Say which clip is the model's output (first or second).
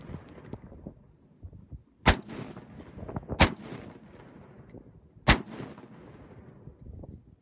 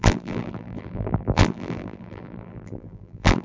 second